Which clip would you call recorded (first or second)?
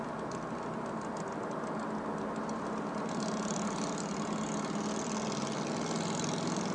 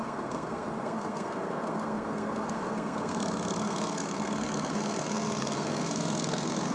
first